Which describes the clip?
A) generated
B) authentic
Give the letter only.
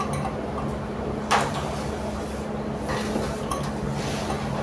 B